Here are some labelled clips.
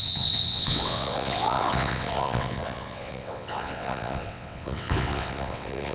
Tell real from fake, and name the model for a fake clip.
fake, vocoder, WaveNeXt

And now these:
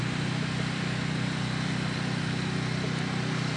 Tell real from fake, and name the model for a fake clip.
real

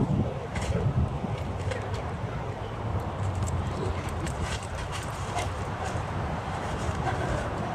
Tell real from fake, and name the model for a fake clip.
fake, vocoder, BigVGAN v2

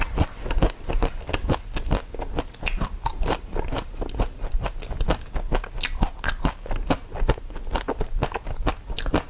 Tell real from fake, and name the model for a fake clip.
real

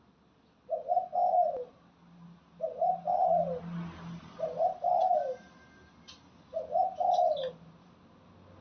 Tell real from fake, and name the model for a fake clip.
real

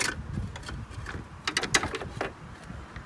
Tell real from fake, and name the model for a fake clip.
real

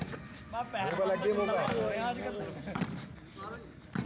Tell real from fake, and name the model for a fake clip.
real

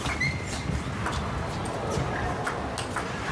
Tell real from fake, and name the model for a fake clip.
real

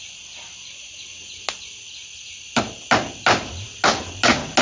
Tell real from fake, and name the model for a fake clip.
real